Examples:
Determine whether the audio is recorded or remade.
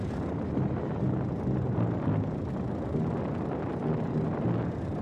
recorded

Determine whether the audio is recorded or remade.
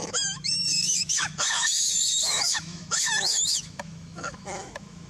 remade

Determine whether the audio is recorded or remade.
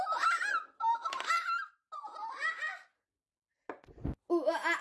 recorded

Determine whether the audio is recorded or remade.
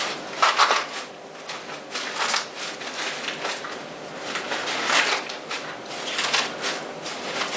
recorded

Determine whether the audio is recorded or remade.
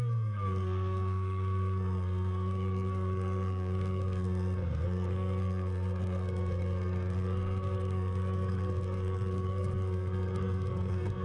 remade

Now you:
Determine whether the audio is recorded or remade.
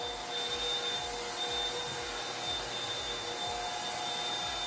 recorded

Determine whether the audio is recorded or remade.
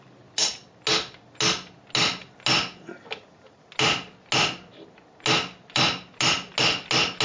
recorded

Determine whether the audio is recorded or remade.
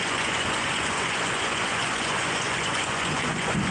remade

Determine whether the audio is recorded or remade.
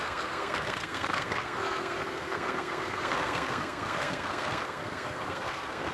remade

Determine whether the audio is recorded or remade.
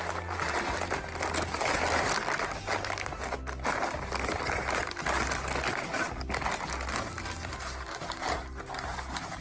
recorded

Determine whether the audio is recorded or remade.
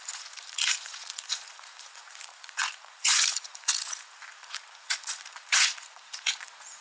remade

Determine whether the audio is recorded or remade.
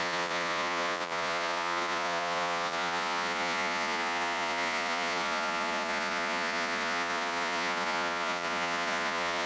remade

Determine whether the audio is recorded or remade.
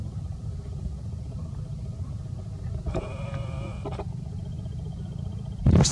recorded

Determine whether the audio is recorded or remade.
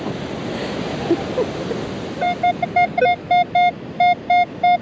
recorded